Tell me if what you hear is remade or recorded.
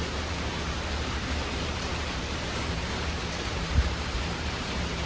remade